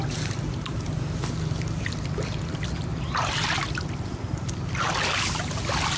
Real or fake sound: real